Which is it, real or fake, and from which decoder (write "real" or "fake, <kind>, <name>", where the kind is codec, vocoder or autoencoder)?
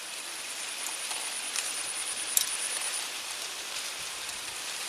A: fake, vocoder, BigVGAN v2